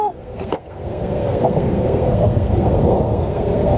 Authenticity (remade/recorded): remade